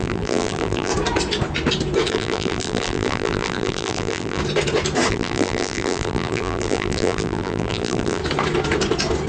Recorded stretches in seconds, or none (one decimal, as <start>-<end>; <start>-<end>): 0.9-2.1; 4.4-5.1; 8.2-9.3